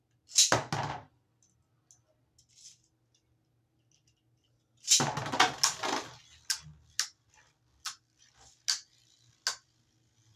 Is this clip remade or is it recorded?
recorded